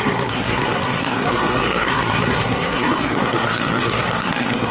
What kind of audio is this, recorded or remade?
remade